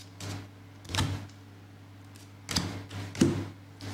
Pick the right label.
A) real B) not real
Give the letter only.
A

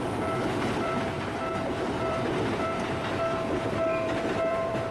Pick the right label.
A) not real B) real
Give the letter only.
A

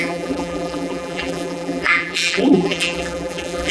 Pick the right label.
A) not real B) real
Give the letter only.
A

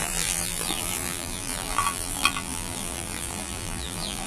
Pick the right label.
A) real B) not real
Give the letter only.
B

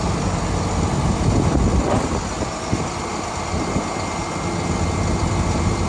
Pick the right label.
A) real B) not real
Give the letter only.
A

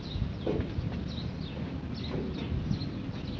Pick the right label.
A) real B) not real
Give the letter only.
A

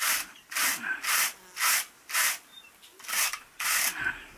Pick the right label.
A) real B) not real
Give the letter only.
A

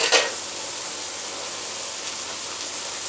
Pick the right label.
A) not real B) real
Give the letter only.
B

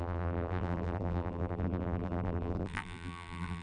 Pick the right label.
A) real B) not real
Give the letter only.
B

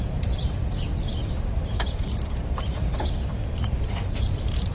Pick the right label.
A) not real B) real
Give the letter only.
A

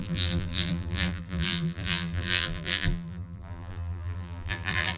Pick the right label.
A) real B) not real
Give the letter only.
B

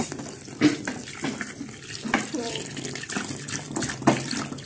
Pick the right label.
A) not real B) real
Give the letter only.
B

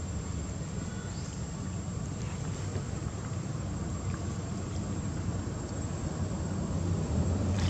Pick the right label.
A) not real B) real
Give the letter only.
A